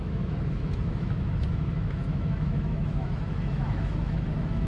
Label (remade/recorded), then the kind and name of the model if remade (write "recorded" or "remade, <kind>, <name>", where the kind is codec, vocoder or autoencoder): remade, autoencoder, DAC-VAE